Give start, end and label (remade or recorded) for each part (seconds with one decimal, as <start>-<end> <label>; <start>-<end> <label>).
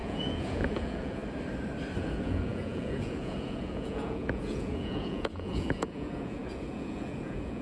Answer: 0.0-1.2 remade; 1.2-2.0 recorded; 2.0-7.6 remade